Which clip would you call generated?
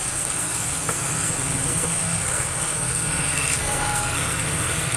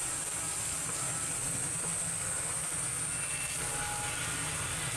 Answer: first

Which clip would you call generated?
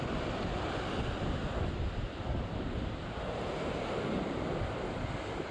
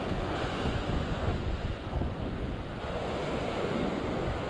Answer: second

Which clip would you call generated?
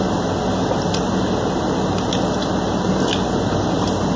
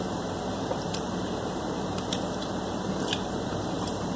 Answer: second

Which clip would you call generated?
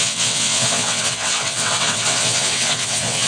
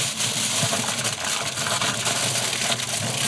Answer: first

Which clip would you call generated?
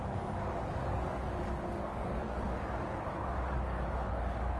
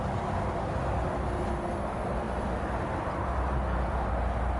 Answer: first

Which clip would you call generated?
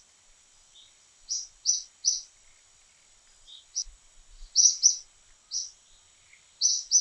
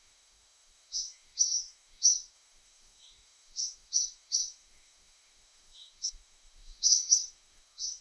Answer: second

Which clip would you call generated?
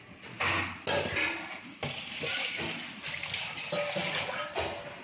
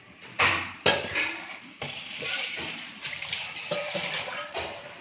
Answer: second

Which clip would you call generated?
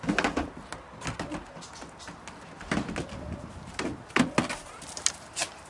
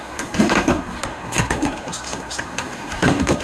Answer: second